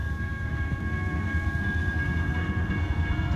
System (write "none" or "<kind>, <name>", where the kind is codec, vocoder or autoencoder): codec, SNAC